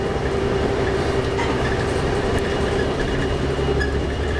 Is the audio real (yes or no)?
no